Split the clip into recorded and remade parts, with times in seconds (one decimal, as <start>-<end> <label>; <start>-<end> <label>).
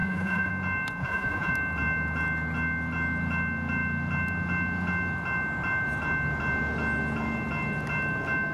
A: 0.0-0.5 remade; 0.5-1.0 recorded; 1.0-1.5 remade; 1.5-8.5 recorded